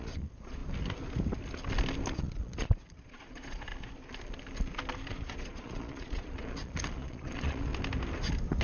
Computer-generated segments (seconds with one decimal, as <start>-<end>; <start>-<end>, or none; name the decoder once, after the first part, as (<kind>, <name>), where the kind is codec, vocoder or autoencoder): 0.0-0.6 (vocoder, Vocos); 2.1-3.7; 5.1-7.7